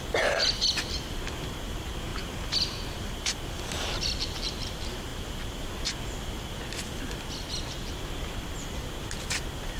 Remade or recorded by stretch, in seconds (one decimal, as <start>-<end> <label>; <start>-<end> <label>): 0.0-9.8 recorded